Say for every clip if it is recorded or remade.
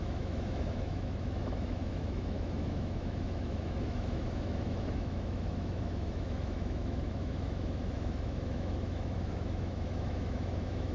remade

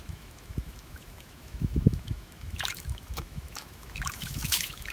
remade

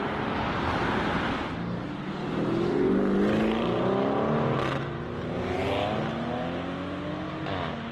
recorded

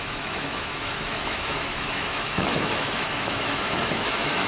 remade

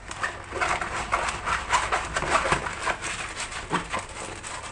recorded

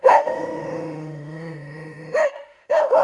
remade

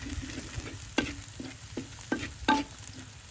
recorded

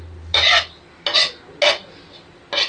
recorded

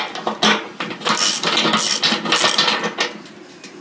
recorded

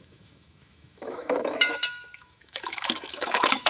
remade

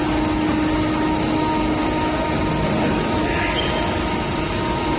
recorded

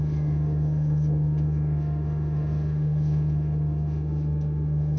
remade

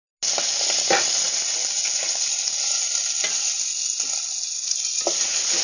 recorded